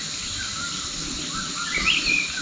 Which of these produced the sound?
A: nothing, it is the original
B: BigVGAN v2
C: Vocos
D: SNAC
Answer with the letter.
B